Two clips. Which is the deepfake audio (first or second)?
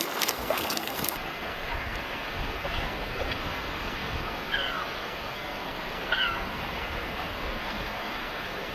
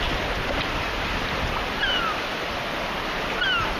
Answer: first